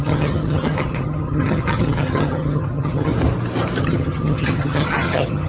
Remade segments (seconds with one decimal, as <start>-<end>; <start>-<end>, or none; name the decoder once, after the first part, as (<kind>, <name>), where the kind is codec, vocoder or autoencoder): 0.0-3.1 (vocoder, HiFi-GAN); 3.8-5.5

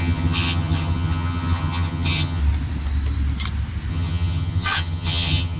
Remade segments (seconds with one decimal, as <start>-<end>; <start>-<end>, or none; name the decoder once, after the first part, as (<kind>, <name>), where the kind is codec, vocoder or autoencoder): 0.0-2.4 (vocoder, HiFi-GAN); 3.9-5.6

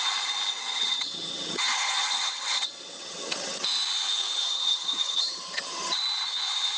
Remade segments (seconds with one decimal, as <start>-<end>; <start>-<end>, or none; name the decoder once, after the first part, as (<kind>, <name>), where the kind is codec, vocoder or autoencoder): 0.6-3.6 (vocoder, HiFi-GAN); 4.4-6.0

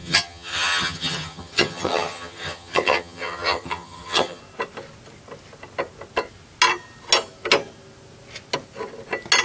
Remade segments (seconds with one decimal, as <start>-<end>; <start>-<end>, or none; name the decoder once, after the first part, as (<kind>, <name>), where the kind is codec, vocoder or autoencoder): 0.0-4.4 (vocoder, HiFi-GAN)

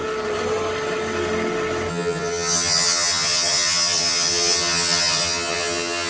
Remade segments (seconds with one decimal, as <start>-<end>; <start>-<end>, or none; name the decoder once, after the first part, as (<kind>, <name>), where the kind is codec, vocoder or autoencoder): 1.9-6.1 (vocoder, HiFi-GAN)

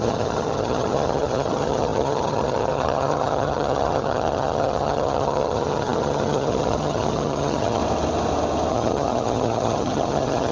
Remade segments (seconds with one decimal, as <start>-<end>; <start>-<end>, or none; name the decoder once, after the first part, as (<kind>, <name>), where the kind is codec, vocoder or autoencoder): 0.0-7.8 (vocoder, HiFi-GAN); 8.7-10.5

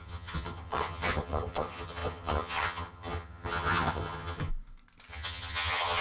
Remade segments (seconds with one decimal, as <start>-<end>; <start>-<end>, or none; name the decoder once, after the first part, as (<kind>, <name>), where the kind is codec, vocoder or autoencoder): 0.0-4.5 (vocoder, HiFi-GAN); 5.1-6.0

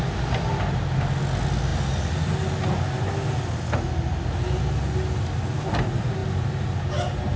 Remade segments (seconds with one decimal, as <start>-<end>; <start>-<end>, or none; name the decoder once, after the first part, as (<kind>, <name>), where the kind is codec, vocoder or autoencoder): none